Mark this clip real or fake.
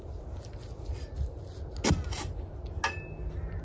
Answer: real